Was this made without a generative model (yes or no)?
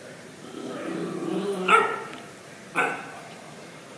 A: no